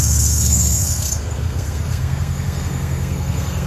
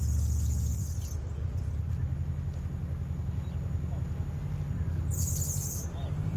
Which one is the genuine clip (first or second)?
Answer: second